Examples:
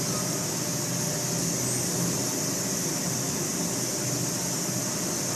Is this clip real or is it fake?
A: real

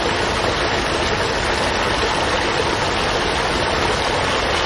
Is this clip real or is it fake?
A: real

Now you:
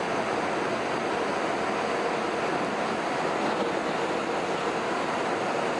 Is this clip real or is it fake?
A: real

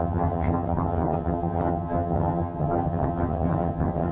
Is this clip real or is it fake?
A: fake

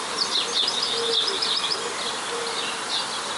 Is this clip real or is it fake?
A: real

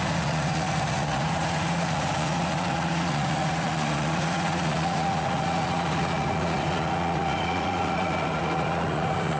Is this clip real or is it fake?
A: fake